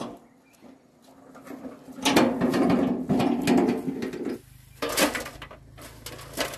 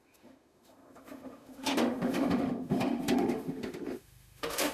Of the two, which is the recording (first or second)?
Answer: first